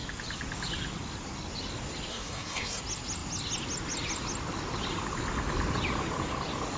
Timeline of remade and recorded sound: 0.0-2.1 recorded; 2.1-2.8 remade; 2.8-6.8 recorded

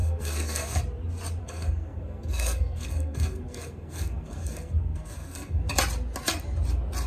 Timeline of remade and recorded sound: 0.0-0.8 remade; 0.8-1.4 recorded; 1.4-5.7 remade; 5.7-7.1 recorded

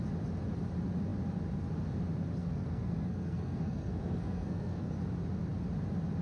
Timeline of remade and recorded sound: 0.0-2.4 recorded; 2.4-4.9 remade; 4.9-6.2 recorded